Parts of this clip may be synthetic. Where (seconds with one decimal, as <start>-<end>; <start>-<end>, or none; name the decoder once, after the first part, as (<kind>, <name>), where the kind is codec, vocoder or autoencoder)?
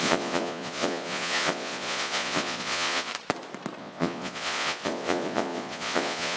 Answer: 0.0-3.1 (vocoder, Vocos); 3.8-6.4